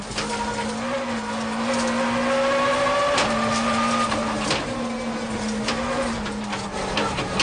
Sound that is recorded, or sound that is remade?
recorded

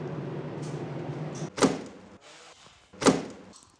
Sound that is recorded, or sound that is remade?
recorded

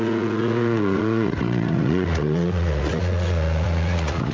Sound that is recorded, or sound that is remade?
remade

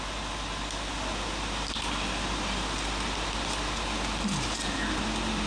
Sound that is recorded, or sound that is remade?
recorded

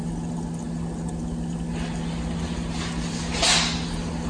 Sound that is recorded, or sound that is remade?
recorded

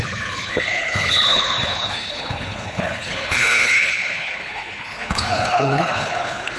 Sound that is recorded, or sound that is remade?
remade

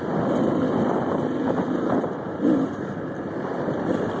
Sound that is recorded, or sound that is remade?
recorded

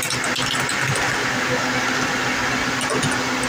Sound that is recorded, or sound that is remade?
recorded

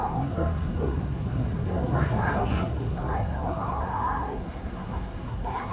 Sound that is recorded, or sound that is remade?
remade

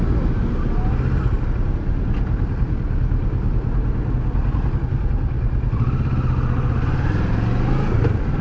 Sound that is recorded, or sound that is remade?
recorded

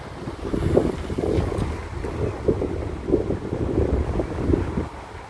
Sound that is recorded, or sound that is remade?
recorded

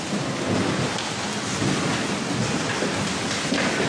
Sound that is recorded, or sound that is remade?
recorded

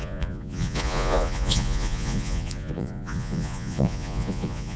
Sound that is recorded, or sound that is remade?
remade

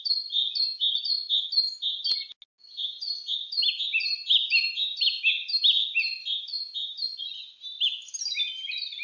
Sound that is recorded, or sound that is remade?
recorded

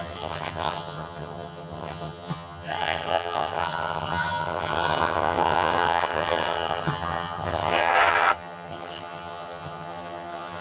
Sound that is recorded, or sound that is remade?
remade